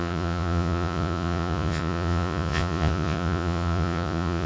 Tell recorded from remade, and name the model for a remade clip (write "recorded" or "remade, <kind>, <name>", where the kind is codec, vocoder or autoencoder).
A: remade, vocoder, Vocos